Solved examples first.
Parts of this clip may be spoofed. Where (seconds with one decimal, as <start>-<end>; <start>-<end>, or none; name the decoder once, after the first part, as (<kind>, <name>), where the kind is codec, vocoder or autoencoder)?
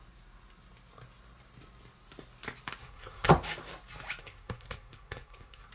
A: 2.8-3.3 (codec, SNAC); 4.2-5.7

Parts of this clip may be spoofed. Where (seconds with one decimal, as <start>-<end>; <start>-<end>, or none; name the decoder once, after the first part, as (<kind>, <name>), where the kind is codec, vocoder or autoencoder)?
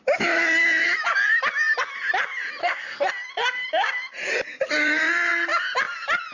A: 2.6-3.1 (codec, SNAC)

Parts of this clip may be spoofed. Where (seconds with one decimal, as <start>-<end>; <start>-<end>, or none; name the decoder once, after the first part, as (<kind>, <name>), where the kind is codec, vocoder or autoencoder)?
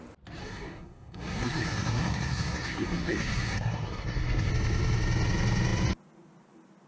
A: 0.4-4.5 (codec, SNAC)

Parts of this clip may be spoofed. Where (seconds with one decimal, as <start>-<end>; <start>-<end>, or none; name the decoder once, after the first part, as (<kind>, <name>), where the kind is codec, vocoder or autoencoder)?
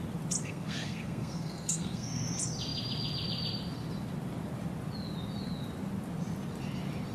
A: 0.4-2.2 (codec, SNAC)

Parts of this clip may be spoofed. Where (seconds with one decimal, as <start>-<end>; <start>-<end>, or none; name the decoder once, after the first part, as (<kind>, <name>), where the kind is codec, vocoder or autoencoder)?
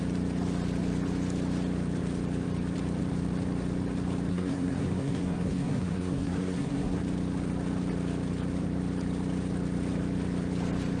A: 4.3-7.0 (codec, SNAC)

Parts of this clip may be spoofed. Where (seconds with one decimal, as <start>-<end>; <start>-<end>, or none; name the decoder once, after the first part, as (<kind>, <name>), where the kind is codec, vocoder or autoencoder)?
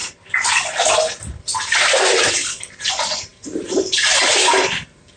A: none